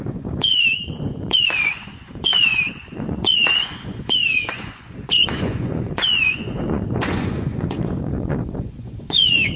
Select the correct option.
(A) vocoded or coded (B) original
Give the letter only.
A